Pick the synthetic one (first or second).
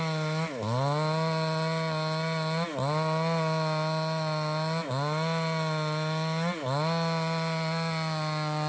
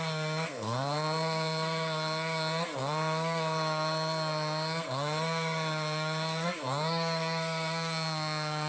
second